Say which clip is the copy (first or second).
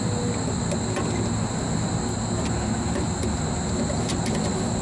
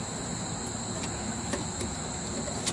second